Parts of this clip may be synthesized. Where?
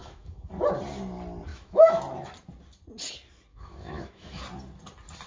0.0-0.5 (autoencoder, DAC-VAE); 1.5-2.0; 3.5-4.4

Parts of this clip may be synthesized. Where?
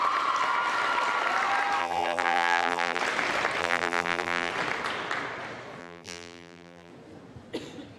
1.8-3.0 (vocoder, BigVGAN v2); 3.6-4.5; 5.8-6.9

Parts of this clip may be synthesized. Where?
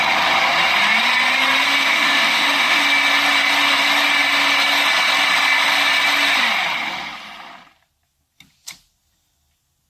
1.8-2.8 (autoencoder, DAC-VAE)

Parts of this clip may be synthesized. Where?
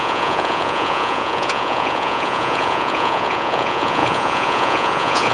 0.0-5.3 (vocoder, Vocos)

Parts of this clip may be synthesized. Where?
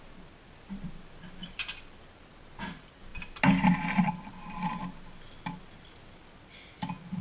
none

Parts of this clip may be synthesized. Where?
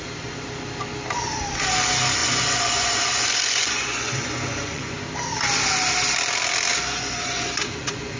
2.2-5.0 (vocoder, Vocos); 6.7-8.2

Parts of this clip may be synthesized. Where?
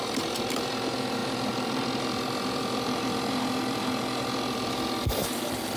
1.2-4.7 (vocoder, BigVGAN v2); 5.2-5.8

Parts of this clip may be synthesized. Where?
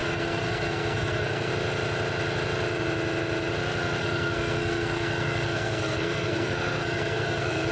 0.0-1.5 (codec, SNAC); 4.0-7.7